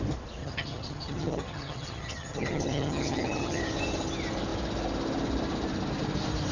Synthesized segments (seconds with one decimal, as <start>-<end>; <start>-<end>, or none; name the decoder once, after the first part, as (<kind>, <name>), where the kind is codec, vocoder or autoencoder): 0.4-3.6 (vocoder, HiFi-GAN)